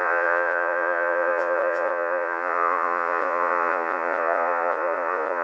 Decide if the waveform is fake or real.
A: fake